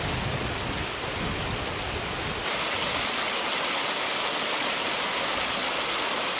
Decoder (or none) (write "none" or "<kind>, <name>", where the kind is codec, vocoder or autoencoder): none